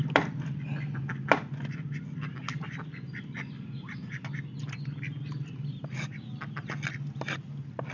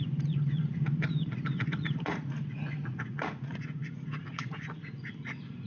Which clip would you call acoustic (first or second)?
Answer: first